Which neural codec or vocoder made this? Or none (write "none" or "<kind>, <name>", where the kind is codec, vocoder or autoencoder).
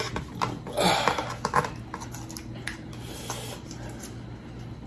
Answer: none